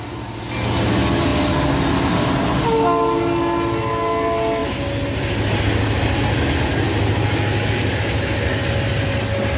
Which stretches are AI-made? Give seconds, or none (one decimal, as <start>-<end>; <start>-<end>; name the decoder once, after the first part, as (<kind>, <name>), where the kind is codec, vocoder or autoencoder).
none